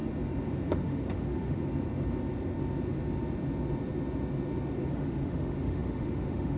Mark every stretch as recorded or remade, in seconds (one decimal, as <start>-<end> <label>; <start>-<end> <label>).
0.0-0.7 recorded; 0.7-1.6 remade; 1.6-4.9 recorded; 4.9-6.6 remade